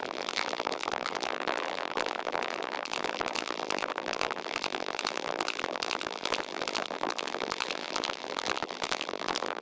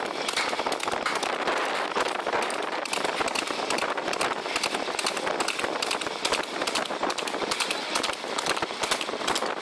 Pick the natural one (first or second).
second